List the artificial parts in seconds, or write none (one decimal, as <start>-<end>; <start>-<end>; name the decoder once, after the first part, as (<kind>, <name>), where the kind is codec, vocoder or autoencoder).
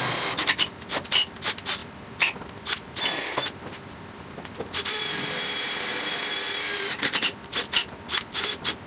0.0-8.9 (vocoder, BigVGAN v2)